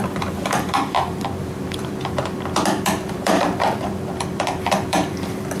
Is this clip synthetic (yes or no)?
yes